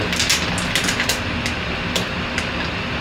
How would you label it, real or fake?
real